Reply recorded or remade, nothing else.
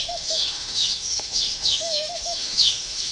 remade